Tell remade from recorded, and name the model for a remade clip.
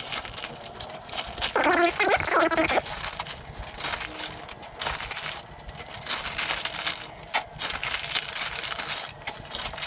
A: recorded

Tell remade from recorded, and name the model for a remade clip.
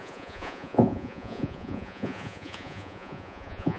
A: remade, vocoder, Vocos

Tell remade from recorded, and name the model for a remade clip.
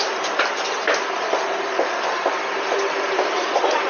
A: remade, vocoder, BigVGAN v2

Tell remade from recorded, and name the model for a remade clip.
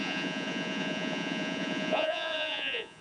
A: remade, vocoder, Vocos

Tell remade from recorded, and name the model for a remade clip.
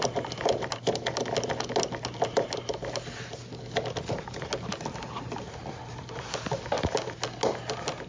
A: recorded